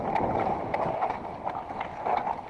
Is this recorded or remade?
recorded